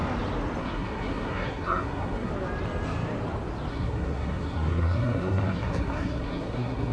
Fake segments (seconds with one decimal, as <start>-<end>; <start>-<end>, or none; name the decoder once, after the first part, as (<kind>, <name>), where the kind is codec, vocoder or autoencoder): 0.6-2.3 (codec, SNAC); 3.7-6.9